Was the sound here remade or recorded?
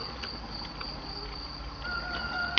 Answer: recorded